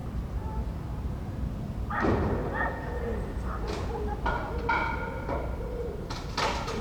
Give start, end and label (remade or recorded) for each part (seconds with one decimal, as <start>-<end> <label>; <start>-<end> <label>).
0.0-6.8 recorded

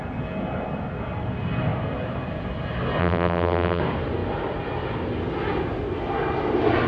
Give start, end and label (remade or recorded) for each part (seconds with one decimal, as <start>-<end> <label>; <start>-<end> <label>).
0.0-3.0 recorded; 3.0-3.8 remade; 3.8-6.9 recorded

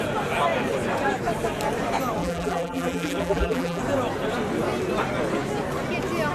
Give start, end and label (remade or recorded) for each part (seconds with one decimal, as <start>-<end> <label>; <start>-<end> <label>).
0.0-2.2 recorded; 2.2-3.8 remade; 3.8-6.3 recorded

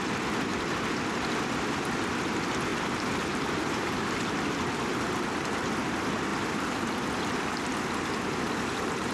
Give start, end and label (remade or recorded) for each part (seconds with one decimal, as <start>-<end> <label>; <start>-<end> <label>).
0.0-2.7 recorded; 2.7-4.1 remade; 4.1-9.1 recorded

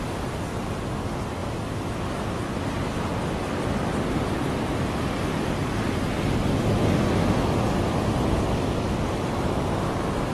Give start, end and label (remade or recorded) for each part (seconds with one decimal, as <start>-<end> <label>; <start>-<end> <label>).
0.0-10.3 recorded

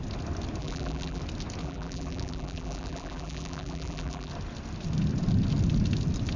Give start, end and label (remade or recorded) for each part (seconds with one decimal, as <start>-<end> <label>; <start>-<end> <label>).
0.0-0.6 recorded; 0.6-1.2 remade; 1.2-1.6 recorded; 1.6-4.3 remade; 4.3-6.4 recorded